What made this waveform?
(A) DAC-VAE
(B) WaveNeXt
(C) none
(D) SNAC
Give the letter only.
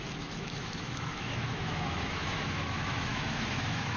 A